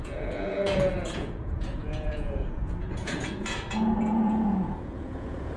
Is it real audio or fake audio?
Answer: fake